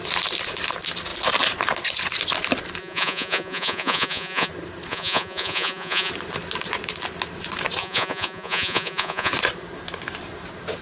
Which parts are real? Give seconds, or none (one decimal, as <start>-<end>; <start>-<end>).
0.0-2.8; 4.5-4.9; 6.1-7.8; 9.3-10.8